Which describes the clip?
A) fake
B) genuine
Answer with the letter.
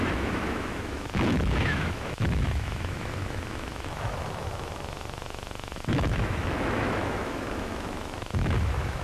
A